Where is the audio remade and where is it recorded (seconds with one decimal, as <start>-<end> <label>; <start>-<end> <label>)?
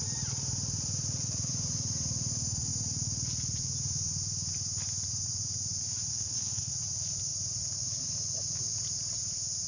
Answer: 0.0-6.1 recorded; 6.1-6.7 remade; 6.7-9.7 recorded